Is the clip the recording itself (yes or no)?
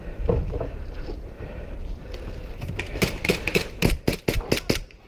yes